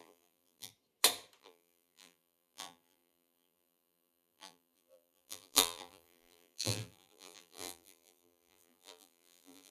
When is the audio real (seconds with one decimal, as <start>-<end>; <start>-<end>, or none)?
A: 0.7-1.4